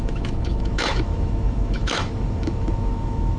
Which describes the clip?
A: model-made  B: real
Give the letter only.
A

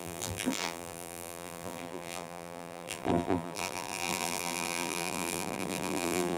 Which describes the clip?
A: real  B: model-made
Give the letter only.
B